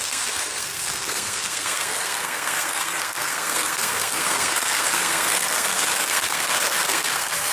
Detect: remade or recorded remade